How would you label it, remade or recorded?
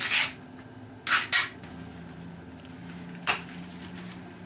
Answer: recorded